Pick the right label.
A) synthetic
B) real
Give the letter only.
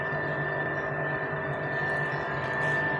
B